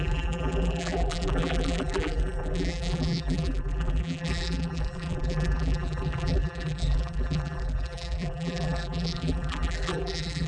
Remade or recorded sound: remade